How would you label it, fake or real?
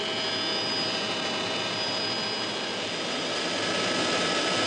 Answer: real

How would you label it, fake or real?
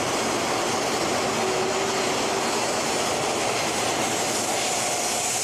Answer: real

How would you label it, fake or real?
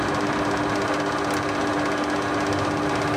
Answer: real